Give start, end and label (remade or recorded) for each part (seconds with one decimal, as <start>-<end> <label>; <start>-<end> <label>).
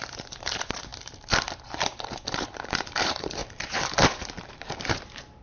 0.0-0.9 remade; 0.9-1.6 recorded; 1.6-5.4 remade